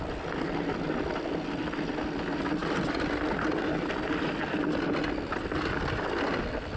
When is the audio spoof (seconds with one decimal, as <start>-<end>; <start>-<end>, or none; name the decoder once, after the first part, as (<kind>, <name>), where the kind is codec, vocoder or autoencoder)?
none